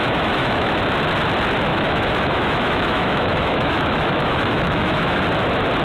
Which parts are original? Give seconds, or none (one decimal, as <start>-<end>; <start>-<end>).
0.8-1.7; 5.2-5.8